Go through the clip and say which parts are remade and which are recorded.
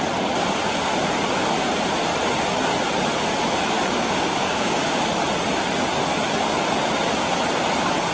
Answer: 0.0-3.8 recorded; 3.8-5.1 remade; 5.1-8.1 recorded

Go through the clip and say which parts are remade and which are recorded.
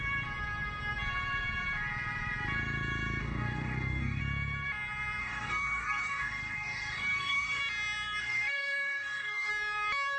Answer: 0.0-3.2 recorded; 3.2-4.2 remade; 4.2-5.2 recorded; 5.2-7.6 remade; 7.6-8.2 recorded; 8.2-9.5 remade; 9.5-10.2 recorded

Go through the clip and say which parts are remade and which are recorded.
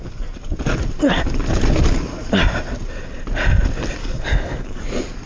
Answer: 0.0-4.0 recorded; 4.0-4.8 remade; 4.8-5.3 recorded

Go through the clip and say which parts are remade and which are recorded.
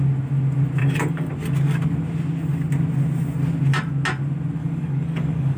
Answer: 0.0-0.8 recorded; 0.8-1.3 remade; 1.3-4.6 recorded; 4.6-5.6 remade